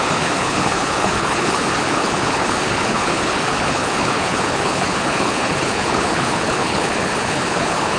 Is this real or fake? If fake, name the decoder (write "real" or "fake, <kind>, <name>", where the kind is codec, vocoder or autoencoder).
fake, codec, HILCodec